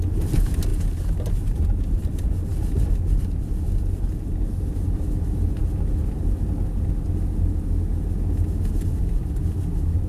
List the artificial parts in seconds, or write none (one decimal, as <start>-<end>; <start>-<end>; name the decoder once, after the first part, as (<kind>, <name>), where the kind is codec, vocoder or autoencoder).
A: none